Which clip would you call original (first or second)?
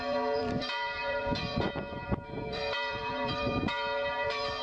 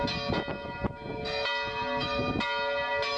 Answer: second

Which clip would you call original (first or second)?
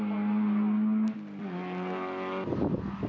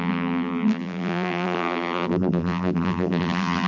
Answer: first